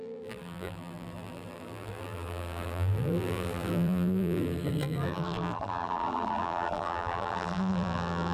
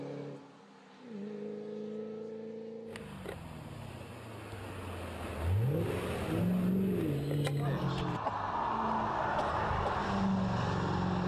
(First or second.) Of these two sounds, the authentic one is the second